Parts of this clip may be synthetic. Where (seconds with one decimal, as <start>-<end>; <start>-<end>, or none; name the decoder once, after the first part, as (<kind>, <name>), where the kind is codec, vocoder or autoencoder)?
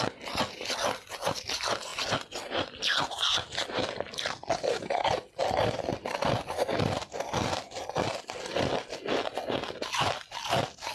none